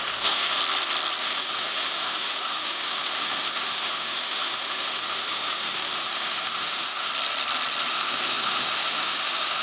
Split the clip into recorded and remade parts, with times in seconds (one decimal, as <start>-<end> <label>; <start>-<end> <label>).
0.0-0.6 remade; 0.6-1.2 recorded; 1.2-7.1 remade; 7.1-7.9 recorded; 7.9-9.6 remade